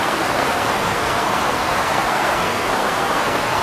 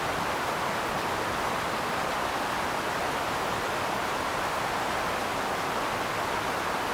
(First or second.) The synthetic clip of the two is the first